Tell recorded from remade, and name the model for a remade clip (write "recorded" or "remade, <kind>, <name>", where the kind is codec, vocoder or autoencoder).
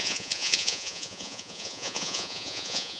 remade, vocoder, Vocos